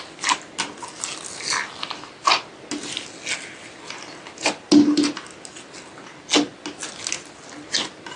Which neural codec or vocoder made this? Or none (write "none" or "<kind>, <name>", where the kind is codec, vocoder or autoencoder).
none